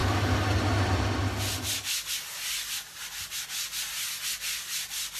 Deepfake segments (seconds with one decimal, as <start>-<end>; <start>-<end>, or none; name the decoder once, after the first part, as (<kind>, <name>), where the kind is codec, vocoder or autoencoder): none